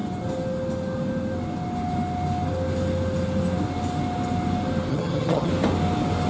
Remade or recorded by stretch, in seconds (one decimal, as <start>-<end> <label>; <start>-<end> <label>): 0.0-4.9 recorded; 4.9-5.5 remade; 5.5-6.3 recorded

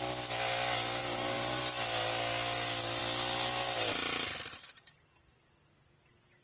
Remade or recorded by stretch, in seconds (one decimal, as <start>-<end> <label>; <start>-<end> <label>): 0.0-1.0 recorded; 1.0-1.6 remade; 1.6-6.4 recorded

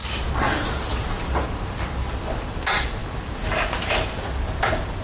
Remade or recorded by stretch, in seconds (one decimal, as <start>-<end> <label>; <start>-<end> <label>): 0.0-5.0 recorded

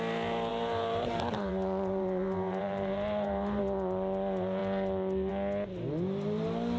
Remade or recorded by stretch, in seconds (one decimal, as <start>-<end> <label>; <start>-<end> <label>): 0.0-0.5 recorded; 0.5-3.6 remade; 3.6-6.8 recorded

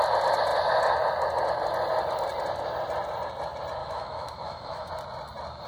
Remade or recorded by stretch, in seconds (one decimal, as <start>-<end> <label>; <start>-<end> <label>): 0.0-3.8 recorded; 3.8-4.9 remade; 4.9-5.7 recorded

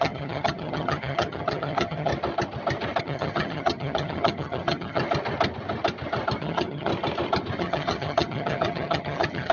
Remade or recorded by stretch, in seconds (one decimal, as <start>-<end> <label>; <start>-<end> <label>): 0.0-2.1 remade; 2.1-3.0 recorded; 3.0-5.0 remade; 5.0-6.4 recorded; 6.4-6.9 remade; 6.9-7.6 recorded; 7.6-9.5 remade

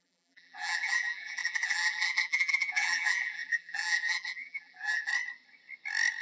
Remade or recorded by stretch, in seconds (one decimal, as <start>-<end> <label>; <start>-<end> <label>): 0.0-5.1 remade; 5.1-6.2 recorded

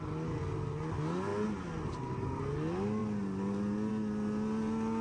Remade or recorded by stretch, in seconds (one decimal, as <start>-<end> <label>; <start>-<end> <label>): 0.0-5.0 recorded